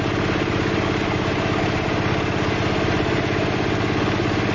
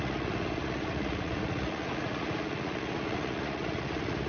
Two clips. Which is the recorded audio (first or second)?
first